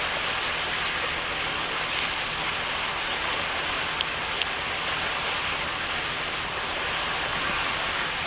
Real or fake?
real